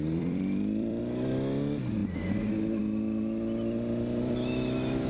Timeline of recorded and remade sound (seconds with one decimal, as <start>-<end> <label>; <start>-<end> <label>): 0.0-1.0 remade; 1.0-5.1 recorded